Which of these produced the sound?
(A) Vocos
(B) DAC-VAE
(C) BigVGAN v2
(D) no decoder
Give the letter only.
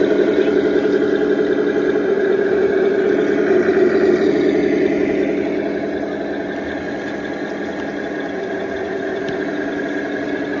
D